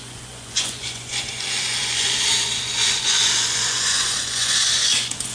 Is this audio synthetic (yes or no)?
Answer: yes